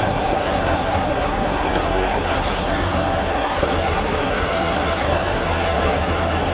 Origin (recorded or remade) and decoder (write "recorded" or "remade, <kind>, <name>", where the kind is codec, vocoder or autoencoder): remade, codec, SNAC